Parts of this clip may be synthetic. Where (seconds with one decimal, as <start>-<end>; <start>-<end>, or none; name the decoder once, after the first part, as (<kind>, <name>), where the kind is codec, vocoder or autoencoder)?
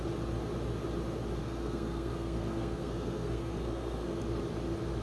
1.4-4.2 (codec, SNAC)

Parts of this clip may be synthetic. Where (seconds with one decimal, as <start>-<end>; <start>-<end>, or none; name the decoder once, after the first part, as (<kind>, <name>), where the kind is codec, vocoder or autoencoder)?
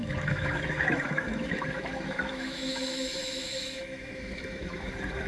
0.0-5.3 (autoencoder, DAC-VAE)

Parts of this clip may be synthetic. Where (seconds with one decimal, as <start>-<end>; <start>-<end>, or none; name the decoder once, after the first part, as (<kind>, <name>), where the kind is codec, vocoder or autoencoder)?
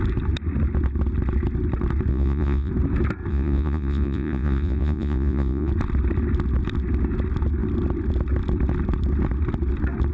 2.1-2.7 (vocoder, Vocos); 3.3-5.7